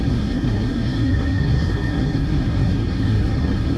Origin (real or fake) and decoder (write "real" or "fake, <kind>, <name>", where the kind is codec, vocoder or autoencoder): fake, codec, SNAC